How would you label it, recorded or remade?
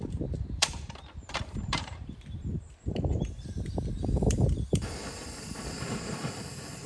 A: remade